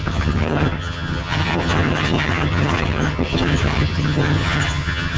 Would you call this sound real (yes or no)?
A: no